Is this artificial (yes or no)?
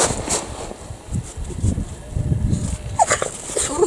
no